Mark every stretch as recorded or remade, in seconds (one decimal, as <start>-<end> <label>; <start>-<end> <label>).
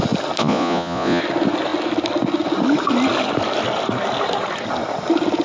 0.0-0.4 recorded; 0.4-1.2 remade; 1.2-5.4 recorded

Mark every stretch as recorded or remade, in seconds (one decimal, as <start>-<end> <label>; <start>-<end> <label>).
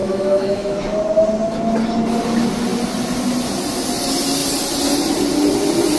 0.0-0.8 remade; 0.8-6.0 recorded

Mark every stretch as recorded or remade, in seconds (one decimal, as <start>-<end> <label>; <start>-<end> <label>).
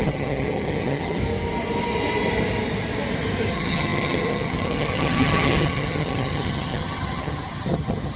0.0-1.2 remade; 1.2-3.5 recorded; 3.5-8.2 remade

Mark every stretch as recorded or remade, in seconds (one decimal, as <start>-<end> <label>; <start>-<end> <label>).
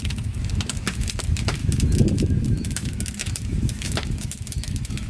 0.0-5.1 remade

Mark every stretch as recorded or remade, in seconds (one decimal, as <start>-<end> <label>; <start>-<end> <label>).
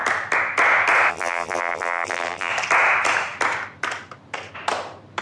0.0-1.1 recorded; 1.1-2.5 remade; 2.5-5.2 recorded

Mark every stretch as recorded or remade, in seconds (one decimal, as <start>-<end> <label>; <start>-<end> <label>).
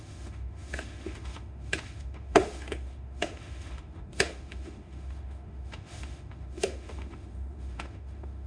0.0-8.5 remade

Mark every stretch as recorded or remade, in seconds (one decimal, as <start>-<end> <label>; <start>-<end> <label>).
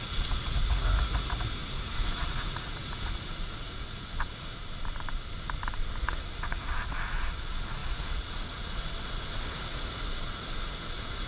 0.0-4.6 remade; 4.6-6.0 recorded; 6.0-11.3 remade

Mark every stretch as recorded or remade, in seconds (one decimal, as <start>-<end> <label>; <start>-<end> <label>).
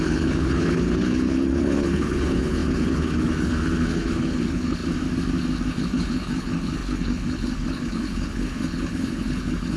0.0-4.8 remade; 4.8-5.7 recorded; 5.7-9.8 remade